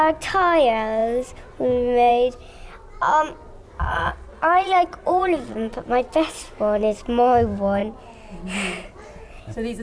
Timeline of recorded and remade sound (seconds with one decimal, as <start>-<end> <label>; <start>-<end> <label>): 0.0-3.9 recorded; 3.9-5.7 remade; 5.7-9.8 recorded